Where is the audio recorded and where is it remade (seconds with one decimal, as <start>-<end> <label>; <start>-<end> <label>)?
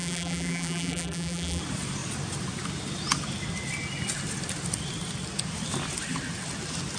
0.0-1.6 remade; 1.6-7.0 recorded